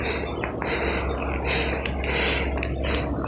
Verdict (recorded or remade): recorded